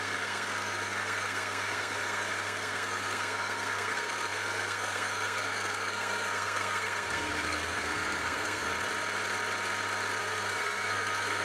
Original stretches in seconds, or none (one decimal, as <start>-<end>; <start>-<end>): 8.7-10.2